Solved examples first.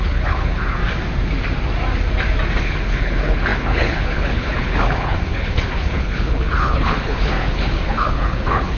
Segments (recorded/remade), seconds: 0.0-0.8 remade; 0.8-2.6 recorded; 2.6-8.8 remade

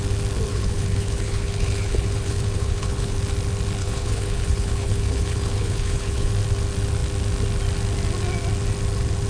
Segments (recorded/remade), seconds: 0.0-0.5 recorded; 0.5-3.2 remade; 3.2-3.8 recorded; 3.8-6.3 remade; 6.3-9.3 recorded

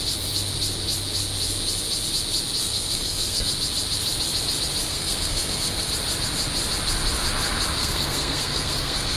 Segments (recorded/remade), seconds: 0.0-2.6 recorded; 2.6-3.5 remade; 3.5-4.9 recorded; 4.9-5.9 remade; 5.9-7.8 recorded; 7.8-9.2 remade

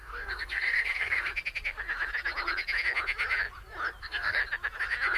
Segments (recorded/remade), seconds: 0.0-1.3 remade; 1.3-4.0 recorded; 4.0-4.4 remade; 4.4-5.2 recorded

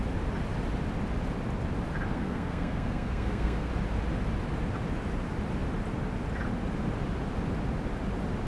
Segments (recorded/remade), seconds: 0.0-2.1 recorded; 2.1-3.7 remade; 3.7-8.5 recorded

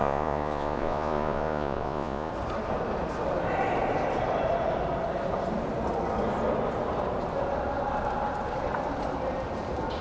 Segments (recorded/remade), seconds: 0.0-2.3 remade; 2.3-10.0 recorded

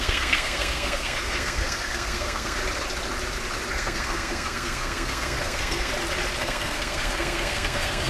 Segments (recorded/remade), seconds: 0.0-2.6 remade; 2.6-3.7 recorded; 3.7-5.9 remade; 5.9-6.4 recorded; 6.4-8.1 remade

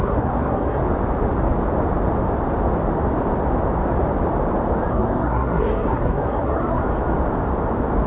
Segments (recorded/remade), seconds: 0.0-0.8 remade; 0.8-4.9 recorded; 4.9-6.8 remade; 6.8-8.1 recorded